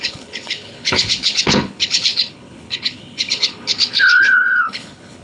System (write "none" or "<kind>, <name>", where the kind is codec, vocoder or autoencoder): codec, HILCodec